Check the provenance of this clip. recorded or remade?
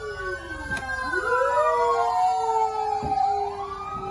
recorded